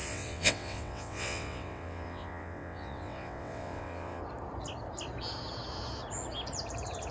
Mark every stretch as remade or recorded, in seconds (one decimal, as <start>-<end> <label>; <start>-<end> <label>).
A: 0.0-4.2 remade; 4.2-7.1 recorded